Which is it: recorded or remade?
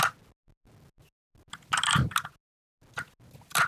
recorded